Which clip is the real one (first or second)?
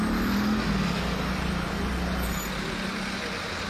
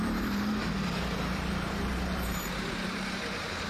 first